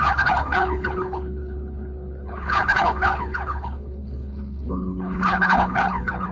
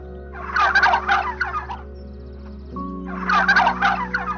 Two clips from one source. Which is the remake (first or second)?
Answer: first